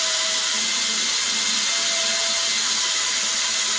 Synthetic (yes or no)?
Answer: no